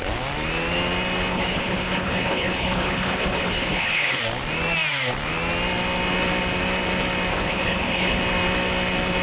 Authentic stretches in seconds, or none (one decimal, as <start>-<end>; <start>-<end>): 0.0-1.3; 4.2-7.3; 8.2-9.2